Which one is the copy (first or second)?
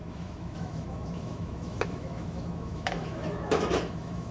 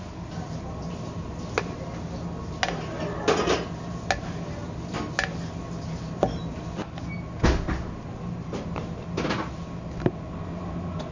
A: first